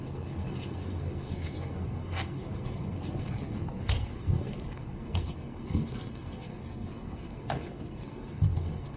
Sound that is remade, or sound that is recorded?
remade